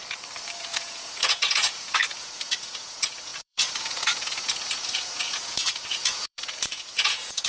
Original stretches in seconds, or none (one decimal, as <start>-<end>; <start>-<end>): 0.0-0.6